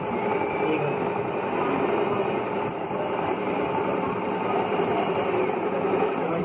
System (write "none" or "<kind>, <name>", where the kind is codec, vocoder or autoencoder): none